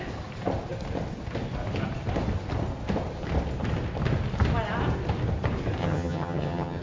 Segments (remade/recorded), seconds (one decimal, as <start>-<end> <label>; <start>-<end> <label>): 0.0-5.8 recorded; 5.8-6.8 remade